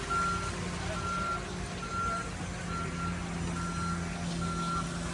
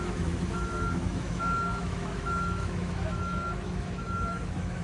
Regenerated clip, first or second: second